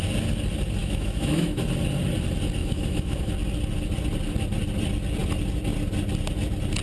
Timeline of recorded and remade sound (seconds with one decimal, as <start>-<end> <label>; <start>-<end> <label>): 0.0-0.8 recorded; 0.8-1.6 remade; 1.6-2.6 recorded; 2.6-3.3 remade; 3.3-6.8 recorded